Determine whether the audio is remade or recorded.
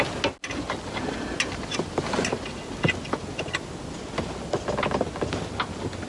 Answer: recorded